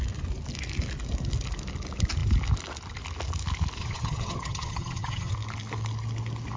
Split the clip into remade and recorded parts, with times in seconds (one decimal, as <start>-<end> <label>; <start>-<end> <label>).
0.0-3.8 recorded; 3.8-5.3 remade; 5.3-6.6 recorded